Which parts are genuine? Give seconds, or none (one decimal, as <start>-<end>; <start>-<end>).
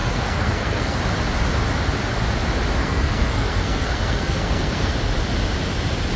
1.0-2.8; 4.9-6.2